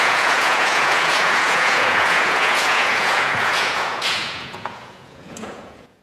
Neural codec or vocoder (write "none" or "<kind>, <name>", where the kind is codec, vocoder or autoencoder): vocoder, Vocos